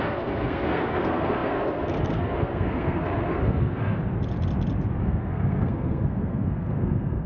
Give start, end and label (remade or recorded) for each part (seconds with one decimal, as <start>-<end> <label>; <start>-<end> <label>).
0.0-4.0 remade; 4.0-5.0 recorded; 5.0-7.3 remade